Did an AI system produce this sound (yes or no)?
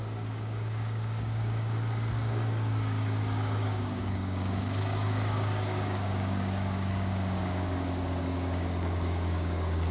yes